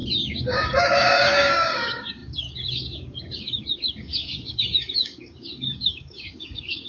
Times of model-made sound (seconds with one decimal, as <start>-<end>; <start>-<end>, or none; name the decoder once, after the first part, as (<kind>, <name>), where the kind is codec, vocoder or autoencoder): 0.0-6.9 (codec, DAC)